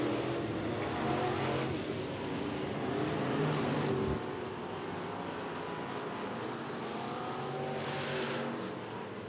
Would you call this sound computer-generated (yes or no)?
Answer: no